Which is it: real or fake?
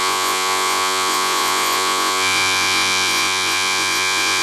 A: fake